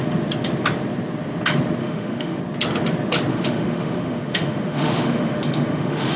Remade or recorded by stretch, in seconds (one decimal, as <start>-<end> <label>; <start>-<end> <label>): 0.0-1.8 recorded; 1.8-2.4 remade; 2.4-3.3 recorded; 3.3-6.2 remade